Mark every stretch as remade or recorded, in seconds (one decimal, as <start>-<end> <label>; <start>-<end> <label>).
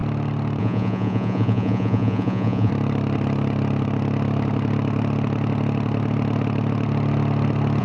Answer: 0.0-0.6 recorded; 0.6-2.7 remade; 2.7-7.8 recorded